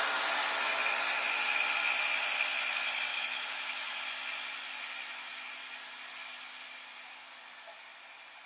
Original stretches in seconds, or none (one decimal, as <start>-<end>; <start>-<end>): 0.0-3.1; 4.0-8.5

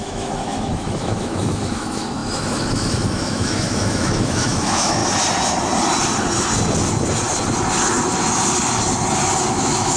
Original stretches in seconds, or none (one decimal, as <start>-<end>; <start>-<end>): 5.0-9.5

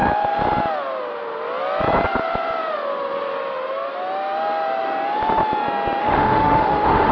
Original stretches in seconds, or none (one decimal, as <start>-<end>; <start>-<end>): 0.0-6.0

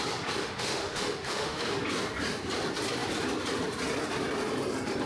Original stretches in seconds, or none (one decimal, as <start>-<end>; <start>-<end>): 0.0-0.4; 1.6-5.1

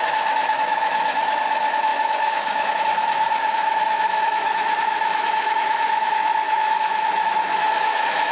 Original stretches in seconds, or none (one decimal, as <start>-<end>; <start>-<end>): none